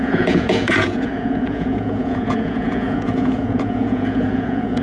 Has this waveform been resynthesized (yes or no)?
yes